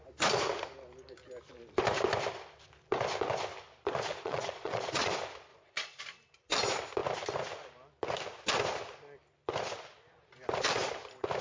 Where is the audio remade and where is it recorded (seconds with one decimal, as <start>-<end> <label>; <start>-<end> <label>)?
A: 0.0-4.1 recorded; 4.1-5.1 remade; 5.1-5.5 recorded; 5.5-6.0 remade; 6.0-11.4 recorded

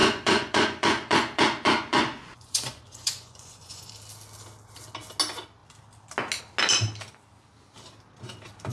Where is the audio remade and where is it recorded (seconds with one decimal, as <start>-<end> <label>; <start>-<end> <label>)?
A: 0.0-3.9 remade; 3.9-8.7 recorded

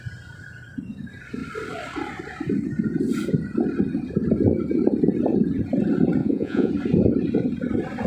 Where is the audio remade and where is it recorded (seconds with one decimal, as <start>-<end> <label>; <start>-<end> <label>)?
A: 0.0-6.2 recorded; 6.2-6.7 remade; 6.7-8.1 recorded

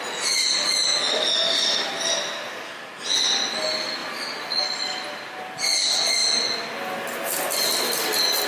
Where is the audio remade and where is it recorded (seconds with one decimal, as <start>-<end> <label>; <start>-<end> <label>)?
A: 0.0-8.5 recorded

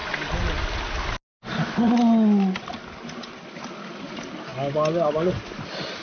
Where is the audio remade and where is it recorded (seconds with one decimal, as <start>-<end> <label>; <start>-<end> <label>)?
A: 0.0-6.0 recorded

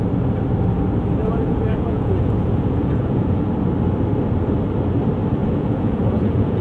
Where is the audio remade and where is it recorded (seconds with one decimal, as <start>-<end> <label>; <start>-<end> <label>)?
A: 0.0-1.2 recorded; 1.2-3.5 remade; 3.5-5.4 recorded; 5.4-6.6 remade